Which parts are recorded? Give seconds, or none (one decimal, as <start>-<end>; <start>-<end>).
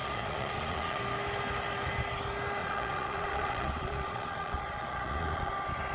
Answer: 1.0-2.6; 5.5-5.9